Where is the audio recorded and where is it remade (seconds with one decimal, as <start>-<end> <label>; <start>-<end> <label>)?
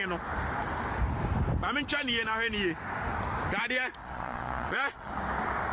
0.0-4.0 recorded; 4.0-5.1 remade; 5.1-5.7 recorded